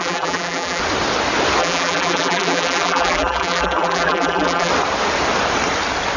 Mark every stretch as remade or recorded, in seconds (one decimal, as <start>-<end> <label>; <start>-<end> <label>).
0.0-0.8 remade; 0.8-1.6 recorded; 1.6-4.7 remade; 4.7-6.2 recorded

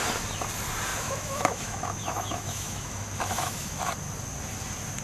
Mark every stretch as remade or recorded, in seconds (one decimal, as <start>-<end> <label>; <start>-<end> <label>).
0.0-0.9 recorded; 0.9-3.9 remade; 3.9-5.0 recorded

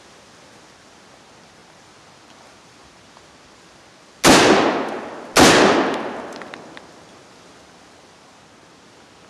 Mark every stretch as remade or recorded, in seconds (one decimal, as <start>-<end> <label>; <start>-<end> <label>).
0.0-9.3 recorded

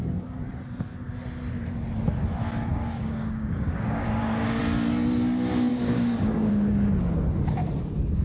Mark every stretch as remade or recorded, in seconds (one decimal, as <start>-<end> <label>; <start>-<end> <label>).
0.0-2.7 recorded; 2.7-4.6 remade; 4.6-5.7 recorded; 5.7-6.5 remade; 6.5-8.2 recorded

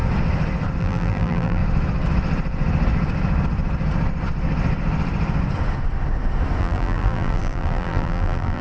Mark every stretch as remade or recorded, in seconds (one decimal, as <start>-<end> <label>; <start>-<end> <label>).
0.0-0.8 recorded; 0.8-1.6 remade; 1.6-6.6 recorded; 6.6-8.6 remade

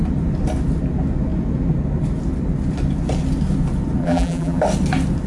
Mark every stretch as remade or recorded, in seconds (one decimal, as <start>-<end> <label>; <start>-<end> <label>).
0.0-4.0 recorded; 4.0-4.6 remade; 4.6-5.3 recorded

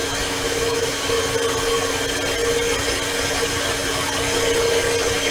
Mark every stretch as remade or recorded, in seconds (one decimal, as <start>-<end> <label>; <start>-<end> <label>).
0.0-1.1 remade; 1.1-5.3 recorded

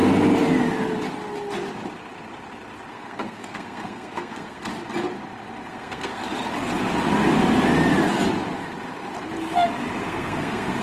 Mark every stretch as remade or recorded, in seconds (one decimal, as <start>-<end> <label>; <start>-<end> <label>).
0.0-2.9 recorded; 2.9-4.7 remade; 4.7-5.7 recorded; 5.7-6.2 remade; 6.2-10.0 recorded; 10.0-10.8 remade